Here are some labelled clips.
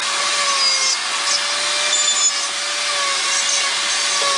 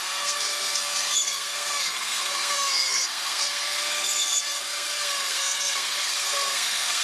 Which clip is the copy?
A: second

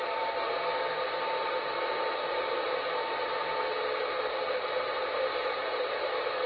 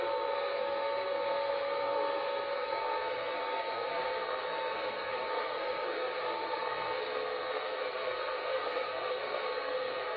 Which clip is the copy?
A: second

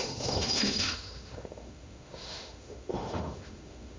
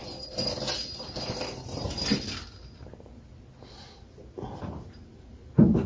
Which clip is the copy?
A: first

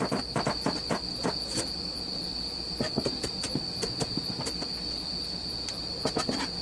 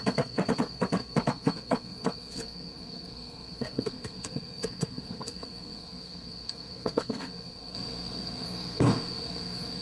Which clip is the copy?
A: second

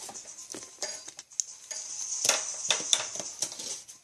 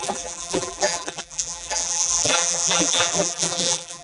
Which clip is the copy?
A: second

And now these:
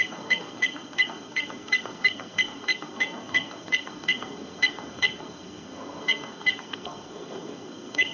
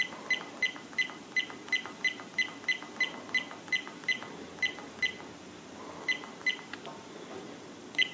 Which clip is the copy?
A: first